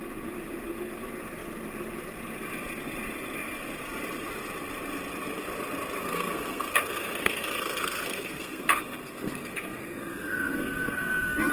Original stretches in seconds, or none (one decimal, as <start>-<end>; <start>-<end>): 0.0-6.0